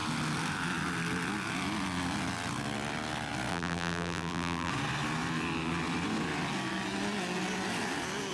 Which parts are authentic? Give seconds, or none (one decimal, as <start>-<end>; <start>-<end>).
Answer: 0.0-3.5; 4.7-8.3

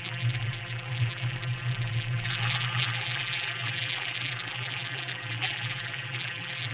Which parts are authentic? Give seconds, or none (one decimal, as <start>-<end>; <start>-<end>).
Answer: none

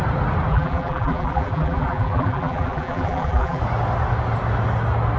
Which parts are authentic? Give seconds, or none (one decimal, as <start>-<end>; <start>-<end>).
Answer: 0.0-0.5; 3.6-5.2

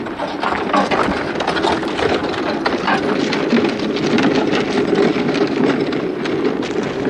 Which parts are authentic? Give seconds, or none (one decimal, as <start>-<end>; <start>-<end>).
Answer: 0.0-2.2; 3.8-7.1